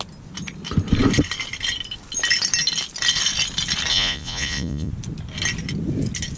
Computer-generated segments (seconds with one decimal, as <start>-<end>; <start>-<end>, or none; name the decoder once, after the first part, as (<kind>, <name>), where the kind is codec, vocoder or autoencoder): 3.9-4.9 (vocoder, Vocos)